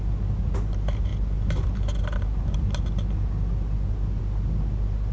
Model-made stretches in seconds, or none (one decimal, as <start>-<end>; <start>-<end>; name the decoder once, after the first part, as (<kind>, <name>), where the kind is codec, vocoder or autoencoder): none